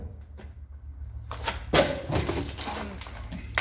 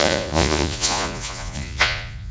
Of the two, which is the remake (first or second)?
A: second